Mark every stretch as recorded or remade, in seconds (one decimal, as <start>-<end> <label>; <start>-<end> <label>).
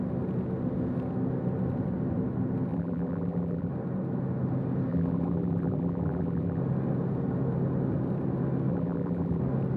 0.0-2.7 recorded; 2.7-3.7 remade; 3.7-4.9 recorded; 4.9-6.6 remade; 6.6-8.7 recorded; 8.7-9.4 remade; 9.4-9.8 recorded